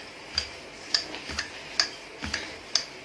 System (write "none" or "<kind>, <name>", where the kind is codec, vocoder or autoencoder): none